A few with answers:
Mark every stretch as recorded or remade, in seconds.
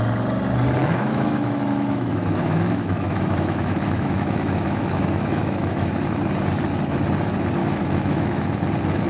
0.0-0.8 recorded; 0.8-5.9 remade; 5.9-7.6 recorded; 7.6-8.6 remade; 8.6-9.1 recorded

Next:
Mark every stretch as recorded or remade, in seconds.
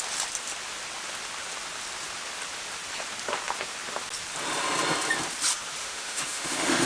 0.0-5.8 recorded; 5.8-6.9 remade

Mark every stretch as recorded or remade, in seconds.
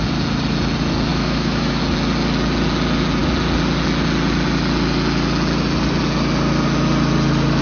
0.0-1.1 recorded; 1.1-1.8 remade; 1.8-7.6 recorded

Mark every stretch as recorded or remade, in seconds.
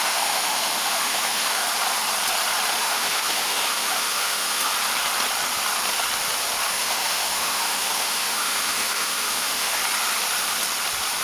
0.0-1.6 remade; 1.6-2.8 recorded; 2.8-4.7 remade; 4.7-6.7 recorded; 6.7-9.8 remade; 9.8-11.2 recorded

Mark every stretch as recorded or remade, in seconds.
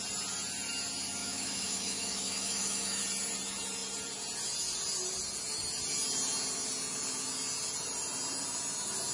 0.0-1.2 recorded; 1.2-3.0 remade; 3.0-9.1 recorded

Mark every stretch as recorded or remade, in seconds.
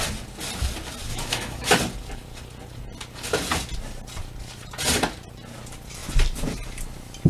0.0-1.1 recorded; 1.1-1.7 remade; 1.7-7.3 recorded